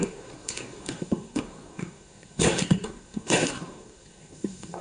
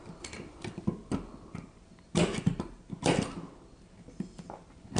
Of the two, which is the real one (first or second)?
second